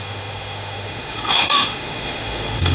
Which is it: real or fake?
fake